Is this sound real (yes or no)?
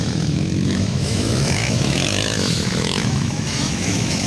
no